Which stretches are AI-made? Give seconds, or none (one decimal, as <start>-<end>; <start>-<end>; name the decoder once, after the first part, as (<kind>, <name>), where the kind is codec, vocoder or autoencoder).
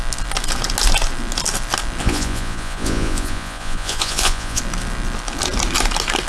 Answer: 2.0-4.6 (vocoder, Vocos)